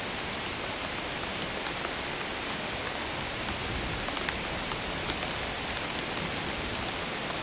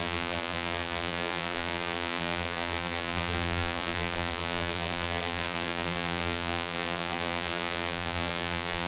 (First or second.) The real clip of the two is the first